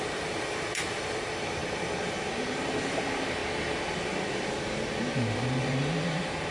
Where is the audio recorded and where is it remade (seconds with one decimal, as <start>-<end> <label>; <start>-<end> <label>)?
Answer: 0.0-3.4 remade; 3.4-4.5 recorded; 4.5-6.5 remade